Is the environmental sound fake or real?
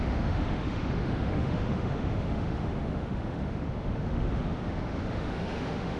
fake